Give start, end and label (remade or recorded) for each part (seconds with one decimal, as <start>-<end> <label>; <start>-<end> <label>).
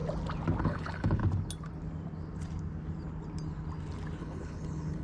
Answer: 0.0-0.6 recorded; 0.6-1.2 remade; 1.2-4.2 recorded; 4.2-5.0 remade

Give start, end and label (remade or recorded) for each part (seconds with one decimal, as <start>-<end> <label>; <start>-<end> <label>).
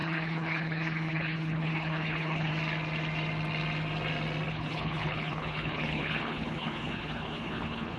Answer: 0.0-2.5 remade; 2.5-4.5 recorded; 4.5-8.0 remade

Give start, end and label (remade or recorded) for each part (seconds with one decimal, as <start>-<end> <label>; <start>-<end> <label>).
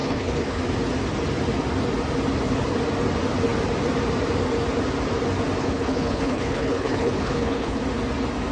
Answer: 0.0-0.6 remade; 0.6-5.6 recorded; 5.6-7.8 remade; 7.8-8.5 recorded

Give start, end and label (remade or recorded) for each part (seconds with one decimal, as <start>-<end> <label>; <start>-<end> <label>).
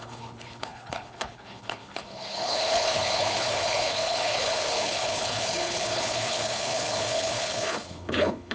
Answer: 0.0-8.5 remade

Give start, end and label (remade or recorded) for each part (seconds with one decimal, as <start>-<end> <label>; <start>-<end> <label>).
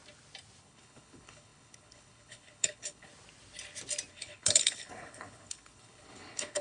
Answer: 0.0-0.6 recorded; 0.6-3.1 remade; 3.1-4.1 recorded; 4.1-6.6 remade